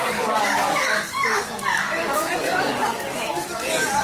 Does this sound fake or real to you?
fake